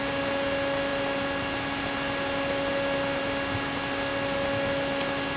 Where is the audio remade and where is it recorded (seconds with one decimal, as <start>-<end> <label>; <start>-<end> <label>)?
0.0-5.4 recorded